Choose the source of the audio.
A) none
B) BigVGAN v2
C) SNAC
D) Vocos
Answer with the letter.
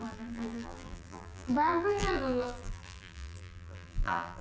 B